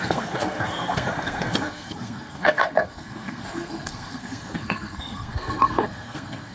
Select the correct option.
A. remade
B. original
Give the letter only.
A